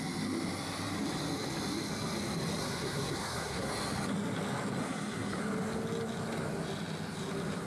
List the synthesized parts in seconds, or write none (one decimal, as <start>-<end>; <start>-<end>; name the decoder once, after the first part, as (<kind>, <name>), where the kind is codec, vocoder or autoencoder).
2.6-3.7 (codec, SNAC); 4.8-5.4